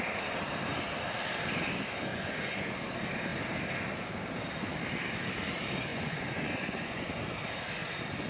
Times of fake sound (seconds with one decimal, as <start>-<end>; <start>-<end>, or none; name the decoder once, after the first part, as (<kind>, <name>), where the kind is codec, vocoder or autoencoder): 2.1-2.7 (vocoder, Vocos); 5.9-7.2